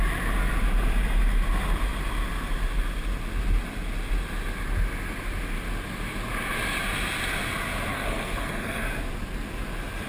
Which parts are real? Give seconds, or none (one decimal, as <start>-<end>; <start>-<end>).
0.0-7.9; 8.8-10.1